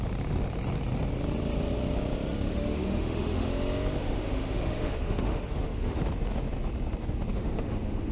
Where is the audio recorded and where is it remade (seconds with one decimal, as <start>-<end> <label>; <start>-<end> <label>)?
0.0-2.5 recorded; 2.5-3.5 remade; 3.5-4.0 recorded; 4.0-6.0 remade; 6.0-7.3 recorded; 7.3-8.1 remade